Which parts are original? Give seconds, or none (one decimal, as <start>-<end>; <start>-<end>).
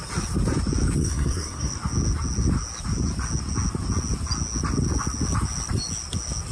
0.0-1.0; 1.7-6.5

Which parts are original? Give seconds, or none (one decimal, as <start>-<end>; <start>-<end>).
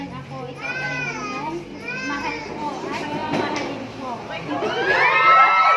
0.0-5.8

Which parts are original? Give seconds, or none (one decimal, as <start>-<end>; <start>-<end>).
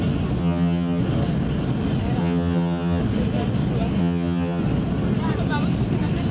0.0-0.4; 1.0-2.2; 3.0-4.0; 4.6-6.3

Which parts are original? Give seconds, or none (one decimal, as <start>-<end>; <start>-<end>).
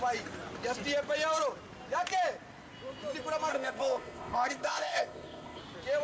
0.0-3.5; 5.6-6.0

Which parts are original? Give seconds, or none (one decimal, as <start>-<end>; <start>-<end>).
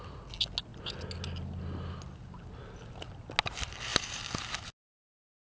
0.0-5.4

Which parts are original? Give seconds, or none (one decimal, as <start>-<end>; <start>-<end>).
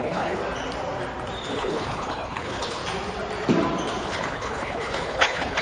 0.4-1.5; 2.8-4.0